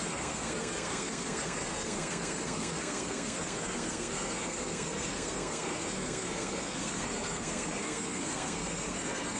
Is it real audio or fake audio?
fake